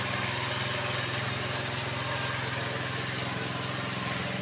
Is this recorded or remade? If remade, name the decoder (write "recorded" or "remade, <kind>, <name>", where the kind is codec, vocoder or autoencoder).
recorded